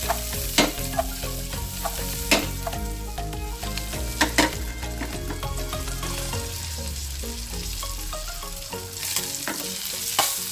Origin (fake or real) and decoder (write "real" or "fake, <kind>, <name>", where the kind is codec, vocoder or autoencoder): real